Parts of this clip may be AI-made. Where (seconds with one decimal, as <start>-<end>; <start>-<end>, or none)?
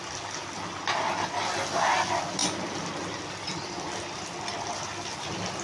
none